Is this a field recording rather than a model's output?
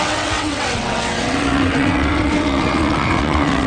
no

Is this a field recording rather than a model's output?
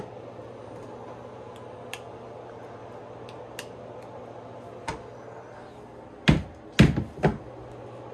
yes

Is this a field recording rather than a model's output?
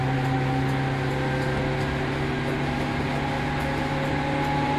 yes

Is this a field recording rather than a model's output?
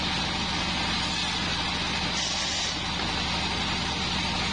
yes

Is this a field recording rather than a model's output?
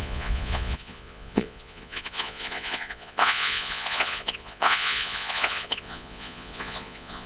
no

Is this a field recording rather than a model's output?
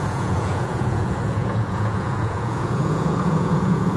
no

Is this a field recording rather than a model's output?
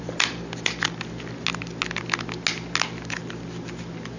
yes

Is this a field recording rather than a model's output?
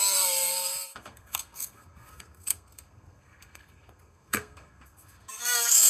no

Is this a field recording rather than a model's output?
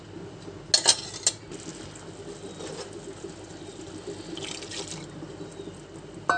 yes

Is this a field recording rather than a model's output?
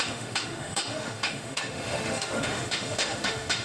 no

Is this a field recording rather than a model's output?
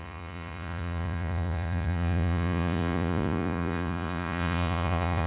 no